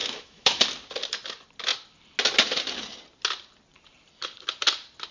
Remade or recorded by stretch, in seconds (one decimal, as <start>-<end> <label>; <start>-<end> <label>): 0.0-0.6 remade; 0.6-5.1 recorded